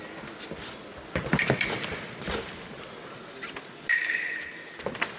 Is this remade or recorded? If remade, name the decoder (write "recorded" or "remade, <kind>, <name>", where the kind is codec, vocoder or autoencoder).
recorded